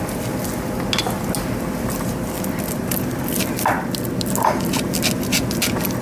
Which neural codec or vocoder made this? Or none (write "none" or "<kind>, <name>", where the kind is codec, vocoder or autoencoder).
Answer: none